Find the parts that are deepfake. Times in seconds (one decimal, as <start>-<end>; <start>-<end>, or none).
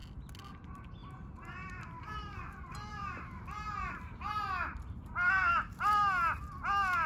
none